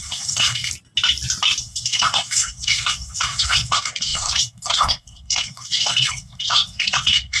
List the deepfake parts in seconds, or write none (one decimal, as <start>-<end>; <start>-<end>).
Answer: 0.0-0.7; 1.6-7.4